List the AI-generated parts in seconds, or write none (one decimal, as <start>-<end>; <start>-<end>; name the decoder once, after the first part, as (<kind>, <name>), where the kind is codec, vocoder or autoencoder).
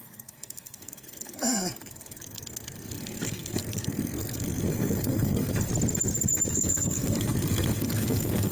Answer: 0.0-5.7 (codec, SNAC); 6.5-8.5